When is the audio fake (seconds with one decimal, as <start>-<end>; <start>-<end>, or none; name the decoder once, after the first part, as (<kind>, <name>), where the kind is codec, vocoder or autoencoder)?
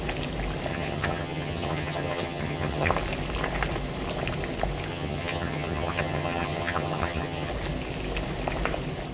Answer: 0.7-2.9 (vocoder, HiFi-GAN); 4.9-7.5